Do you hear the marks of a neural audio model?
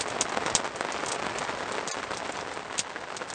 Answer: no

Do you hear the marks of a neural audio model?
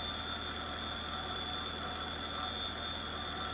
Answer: no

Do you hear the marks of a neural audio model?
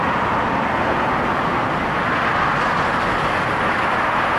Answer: no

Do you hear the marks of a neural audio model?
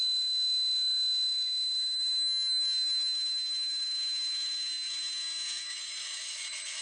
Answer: yes